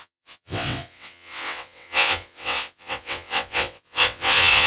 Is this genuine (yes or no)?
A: no